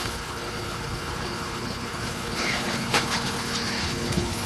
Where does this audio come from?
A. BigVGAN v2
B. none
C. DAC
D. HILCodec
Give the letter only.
D